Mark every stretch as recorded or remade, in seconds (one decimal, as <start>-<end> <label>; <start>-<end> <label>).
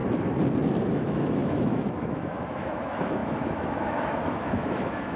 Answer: 0.0-0.9 recorded; 0.9-5.2 remade